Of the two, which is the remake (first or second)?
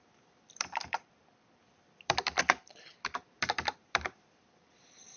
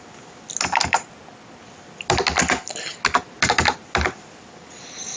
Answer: first